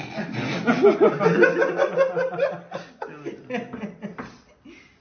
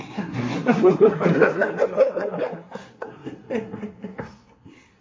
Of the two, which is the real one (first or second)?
first